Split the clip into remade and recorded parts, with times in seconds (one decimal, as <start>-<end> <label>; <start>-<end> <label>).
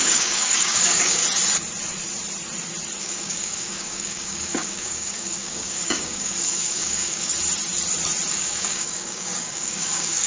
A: 0.0-1.2 remade; 1.2-3.0 recorded; 3.0-7.3 remade; 7.3-8.3 recorded; 8.3-10.3 remade